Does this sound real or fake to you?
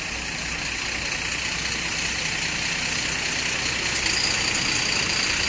real